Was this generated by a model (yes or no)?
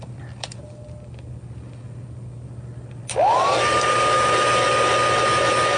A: no